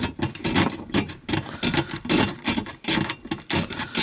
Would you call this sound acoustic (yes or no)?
yes